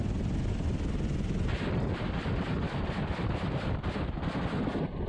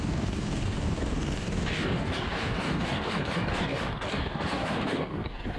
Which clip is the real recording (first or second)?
first